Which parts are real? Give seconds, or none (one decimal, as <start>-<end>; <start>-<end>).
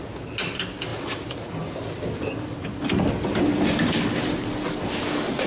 0.0-5.5